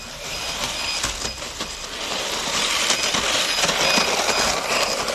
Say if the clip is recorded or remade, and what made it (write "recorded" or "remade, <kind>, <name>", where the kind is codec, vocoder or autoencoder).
recorded